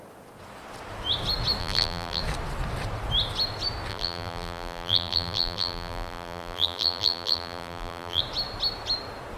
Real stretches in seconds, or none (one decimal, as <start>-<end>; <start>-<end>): 0.0-1.6; 2.2-3.9; 8.2-9.4

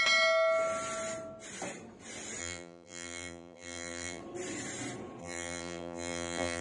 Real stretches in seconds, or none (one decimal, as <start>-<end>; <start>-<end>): 0.0-2.4; 4.2-5.2